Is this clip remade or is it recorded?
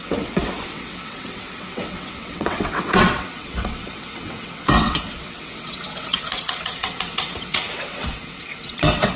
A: remade